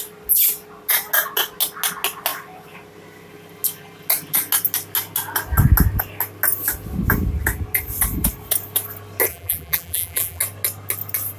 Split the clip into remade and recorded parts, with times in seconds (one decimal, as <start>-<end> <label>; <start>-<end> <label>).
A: 0.0-9.3 recorded; 9.3-10.4 remade; 10.4-11.4 recorded